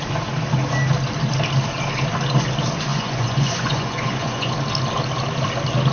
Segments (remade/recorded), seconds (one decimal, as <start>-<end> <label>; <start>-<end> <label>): 0.0-2.9 recorded; 2.9-4.5 remade; 4.5-5.9 recorded